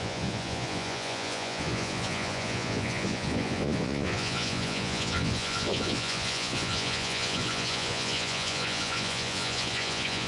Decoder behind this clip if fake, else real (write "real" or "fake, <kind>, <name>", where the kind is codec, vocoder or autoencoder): fake, vocoder, Vocos